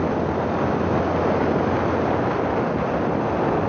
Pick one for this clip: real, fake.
real